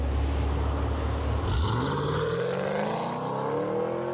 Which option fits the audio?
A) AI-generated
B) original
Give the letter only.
B